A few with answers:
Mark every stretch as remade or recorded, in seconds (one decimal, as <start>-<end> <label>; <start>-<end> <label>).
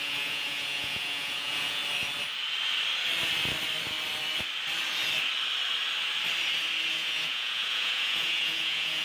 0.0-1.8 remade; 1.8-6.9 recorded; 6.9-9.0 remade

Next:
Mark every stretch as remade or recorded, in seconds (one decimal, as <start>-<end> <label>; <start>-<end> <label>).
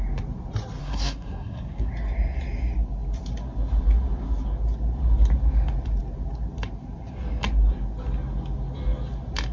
0.0-0.8 recorded; 0.8-1.9 remade; 1.9-9.5 recorded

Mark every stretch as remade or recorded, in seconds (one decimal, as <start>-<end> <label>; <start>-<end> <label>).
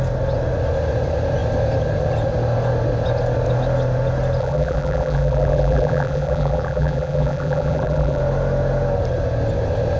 0.0-4.4 recorded; 4.4-8.2 remade; 8.2-10.0 recorded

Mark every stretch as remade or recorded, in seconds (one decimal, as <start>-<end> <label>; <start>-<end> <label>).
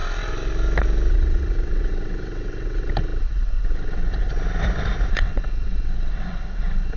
0.0-1.1 recorded; 1.1-4.3 remade; 4.3-5.1 recorded; 5.1-7.0 remade